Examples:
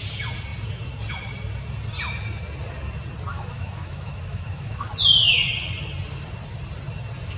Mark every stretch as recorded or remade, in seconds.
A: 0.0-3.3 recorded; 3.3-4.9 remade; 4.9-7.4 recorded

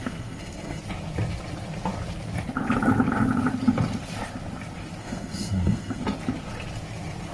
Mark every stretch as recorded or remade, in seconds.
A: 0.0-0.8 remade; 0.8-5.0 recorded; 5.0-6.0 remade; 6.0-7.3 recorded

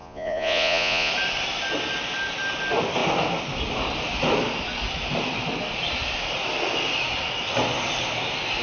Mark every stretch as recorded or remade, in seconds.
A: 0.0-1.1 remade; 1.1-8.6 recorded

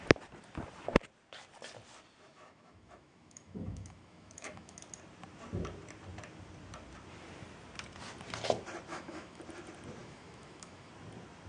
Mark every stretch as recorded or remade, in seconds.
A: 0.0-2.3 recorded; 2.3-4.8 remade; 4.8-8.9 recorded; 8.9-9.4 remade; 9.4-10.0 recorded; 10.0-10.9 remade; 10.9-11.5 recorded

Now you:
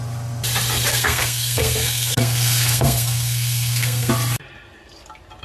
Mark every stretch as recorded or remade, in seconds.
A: 0.0-0.9 recorded; 0.9-4.1 remade; 4.1-5.4 recorded